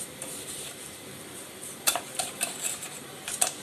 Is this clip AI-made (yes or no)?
yes